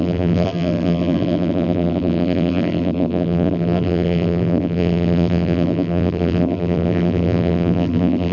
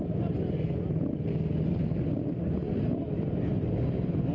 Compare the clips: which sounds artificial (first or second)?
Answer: first